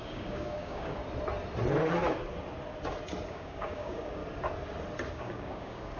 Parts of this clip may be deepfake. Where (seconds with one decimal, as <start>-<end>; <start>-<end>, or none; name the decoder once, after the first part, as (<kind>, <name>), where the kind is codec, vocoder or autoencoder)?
0.0-1.0 (codec, DAC); 3.3-4.2; 5.1-6.0